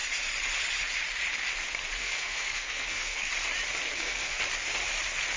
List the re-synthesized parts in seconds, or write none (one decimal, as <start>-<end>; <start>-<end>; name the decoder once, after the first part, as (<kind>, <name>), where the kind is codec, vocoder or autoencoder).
2.0-3.3 (codec, SNAC); 3.9-4.4